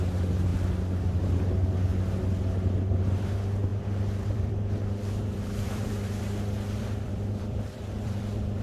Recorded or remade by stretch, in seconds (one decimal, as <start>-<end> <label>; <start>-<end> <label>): 0.0-3.7 recorded; 3.7-8.2 remade; 8.2-8.6 recorded